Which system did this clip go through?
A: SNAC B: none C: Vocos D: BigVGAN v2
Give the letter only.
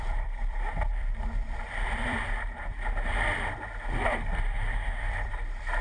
D